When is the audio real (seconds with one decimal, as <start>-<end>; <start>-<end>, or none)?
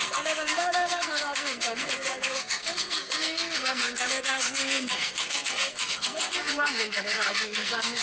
none